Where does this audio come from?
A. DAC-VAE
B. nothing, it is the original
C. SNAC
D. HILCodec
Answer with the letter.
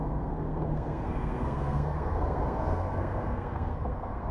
C